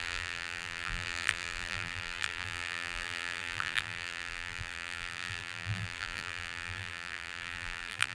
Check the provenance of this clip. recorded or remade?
remade